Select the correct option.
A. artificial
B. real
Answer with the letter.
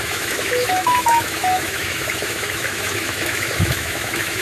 A